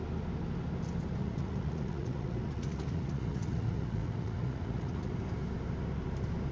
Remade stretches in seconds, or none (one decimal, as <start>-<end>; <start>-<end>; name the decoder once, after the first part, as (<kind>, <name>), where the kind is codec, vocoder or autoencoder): 1.2-5.1 (vocoder, Vocos)